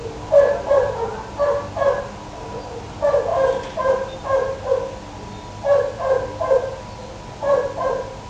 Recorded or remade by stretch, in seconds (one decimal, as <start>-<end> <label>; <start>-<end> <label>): 0.0-8.3 recorded